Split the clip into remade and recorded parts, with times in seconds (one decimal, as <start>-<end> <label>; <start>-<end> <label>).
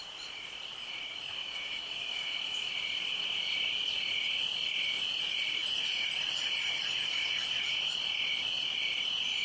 0.0-1.4 recorded; 1.4-2.7 remade; 2.7-9.4 recorded